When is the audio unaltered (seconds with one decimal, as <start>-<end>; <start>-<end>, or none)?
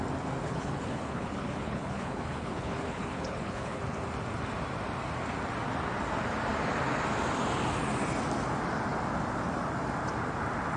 0.0-0.4; 3.8-10.8